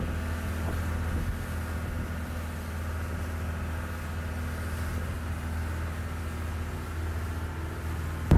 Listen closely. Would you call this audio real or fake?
real